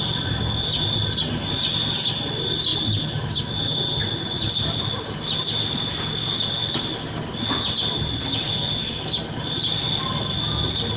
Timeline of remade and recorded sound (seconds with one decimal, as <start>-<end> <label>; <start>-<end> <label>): 0.0-11.0 recorded